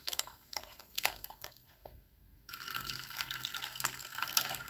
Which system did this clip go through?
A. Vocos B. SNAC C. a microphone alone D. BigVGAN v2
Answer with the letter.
B